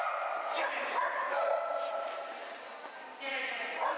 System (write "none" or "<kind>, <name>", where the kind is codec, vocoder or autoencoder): none